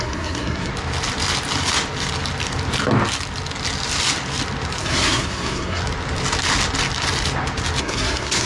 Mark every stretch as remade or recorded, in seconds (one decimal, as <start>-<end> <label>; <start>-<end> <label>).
0.0-0.7 remade; 0.7-4.8 recorded; 4.8-5.8 remade; 5.8-7.8 recorded; 7.8-8.5 remade